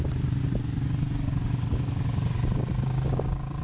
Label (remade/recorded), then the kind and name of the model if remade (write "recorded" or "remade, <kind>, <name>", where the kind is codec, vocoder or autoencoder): recorded